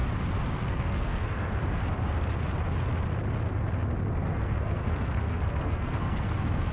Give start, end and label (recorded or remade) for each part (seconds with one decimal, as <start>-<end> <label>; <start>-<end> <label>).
0.0-0.5 recorded; 0.5-1.5 remade; 1.5-4.1 recorded; 4.1-6.7 remade